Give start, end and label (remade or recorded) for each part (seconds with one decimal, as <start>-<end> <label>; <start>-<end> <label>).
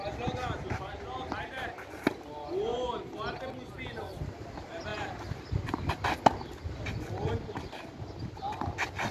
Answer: 0.0-9.1 recorded